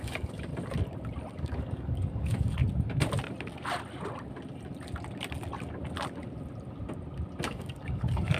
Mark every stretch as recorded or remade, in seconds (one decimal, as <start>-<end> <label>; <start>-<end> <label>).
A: 0.0-0.5 remade; 0.5-1.3 recorded; 1.3-2.6 remade; 2.6-7.4 recorded; 7.4-8.4 remade